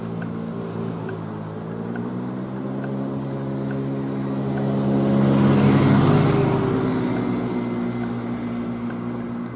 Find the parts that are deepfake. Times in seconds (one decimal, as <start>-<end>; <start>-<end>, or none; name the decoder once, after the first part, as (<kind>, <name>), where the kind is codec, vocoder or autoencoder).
none